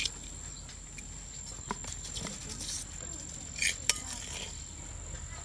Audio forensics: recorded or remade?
recorded